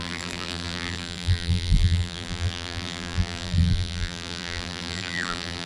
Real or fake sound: fake